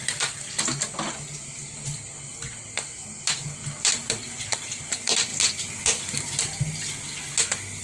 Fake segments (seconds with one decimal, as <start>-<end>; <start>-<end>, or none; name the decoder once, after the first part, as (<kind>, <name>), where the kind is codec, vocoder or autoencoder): none